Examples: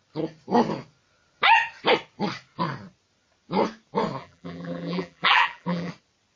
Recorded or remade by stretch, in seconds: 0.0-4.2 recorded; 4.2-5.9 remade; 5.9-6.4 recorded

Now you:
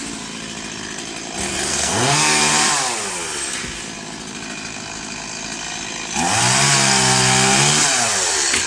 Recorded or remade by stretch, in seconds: 0.0-1.7 recorded; 1.7-2.4 remade; 2.4-8.7 recorded

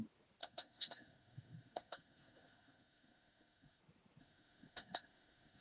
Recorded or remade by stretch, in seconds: 0.0-0.4 recorded; 0.4-3.8 remade; 3.8-4.2 recorded; 4.2-5.6 remade

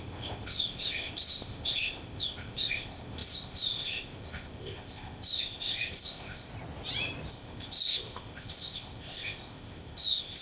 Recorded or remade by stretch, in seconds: 0.0-6.5 remade; 6.5-7.3 recorded; 7.3-10.4 remade

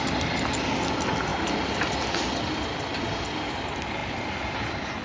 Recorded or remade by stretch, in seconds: 0.0-5.0 recorded